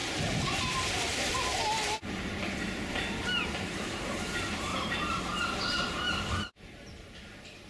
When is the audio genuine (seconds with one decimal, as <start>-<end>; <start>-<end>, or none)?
0.0-2.9